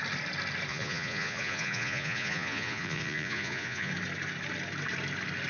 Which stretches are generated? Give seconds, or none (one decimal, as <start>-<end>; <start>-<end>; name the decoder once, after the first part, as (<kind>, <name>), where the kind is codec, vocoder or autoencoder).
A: 0.7-3.9 (vocoder, Vocos)